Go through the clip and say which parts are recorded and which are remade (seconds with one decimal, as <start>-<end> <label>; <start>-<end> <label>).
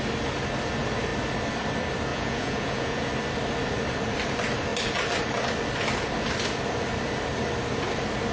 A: 0.0-2.1 recorded; 2.1-3.1 remade; 3.1-8.3 recorded